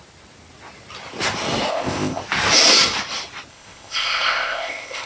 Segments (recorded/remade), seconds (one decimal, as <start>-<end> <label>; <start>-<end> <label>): 0.0-1.7 recorded; 1.7-2.2 remade; 2.2-3.5 recorded; 3.5-5.1 remade